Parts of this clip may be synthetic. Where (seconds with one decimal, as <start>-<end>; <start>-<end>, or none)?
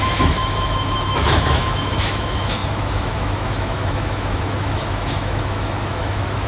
0.0-6.5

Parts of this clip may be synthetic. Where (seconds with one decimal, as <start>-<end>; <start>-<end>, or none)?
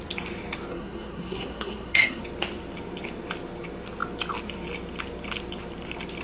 0.7-2.2